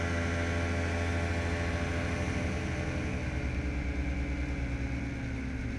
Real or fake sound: real